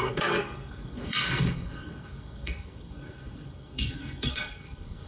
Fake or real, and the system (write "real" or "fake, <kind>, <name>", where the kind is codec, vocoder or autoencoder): fake, codec, SNAC